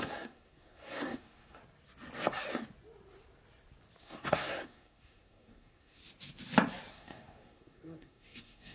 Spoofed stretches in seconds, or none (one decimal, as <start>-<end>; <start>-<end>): 0.0-1.6; 4.0-6.0; 6.9-8.7

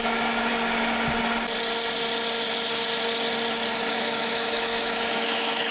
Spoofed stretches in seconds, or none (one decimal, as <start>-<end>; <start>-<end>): 0.0-0.5; 3.9-5.7

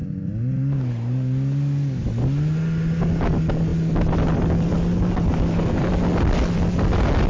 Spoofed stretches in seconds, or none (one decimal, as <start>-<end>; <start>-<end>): none

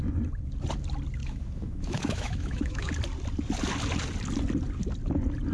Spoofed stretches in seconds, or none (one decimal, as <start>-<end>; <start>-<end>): 1.2-2.9

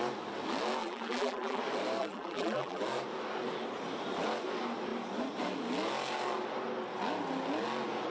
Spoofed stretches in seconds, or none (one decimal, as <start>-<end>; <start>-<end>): 0.8-1.6; 2.0-2.8

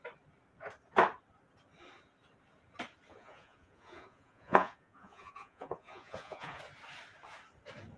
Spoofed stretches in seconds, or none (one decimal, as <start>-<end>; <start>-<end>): 3.1-6.6